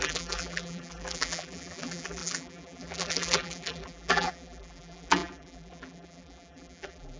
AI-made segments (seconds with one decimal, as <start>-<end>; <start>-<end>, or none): 0.0-7.2